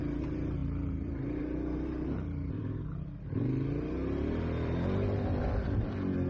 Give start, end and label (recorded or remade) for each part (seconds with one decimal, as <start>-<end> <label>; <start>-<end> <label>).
0.0-0.6 recorded; 0.6-1.4 remade; 1.4-6.3 recorded